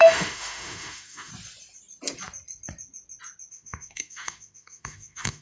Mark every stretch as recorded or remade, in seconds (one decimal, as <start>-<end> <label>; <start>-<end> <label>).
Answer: 0.0-1.3 remade; 1.3-3.5 recorded; 3.5-5.4 remade